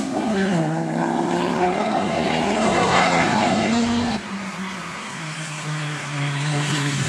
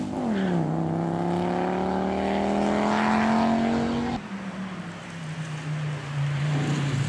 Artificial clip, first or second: first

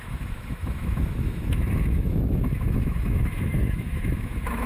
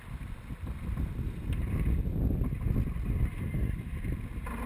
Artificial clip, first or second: first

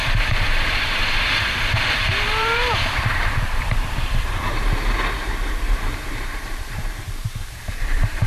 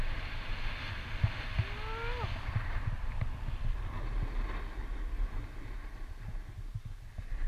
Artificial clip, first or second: first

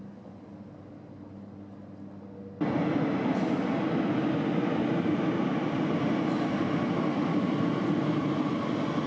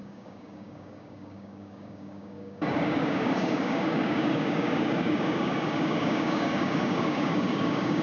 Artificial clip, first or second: second